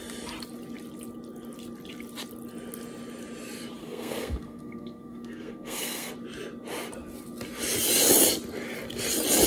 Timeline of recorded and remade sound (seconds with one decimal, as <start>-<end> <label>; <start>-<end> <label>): 0.0-3.8 recorded; 3.8-6.1 remade; 6.1-9.5 recorded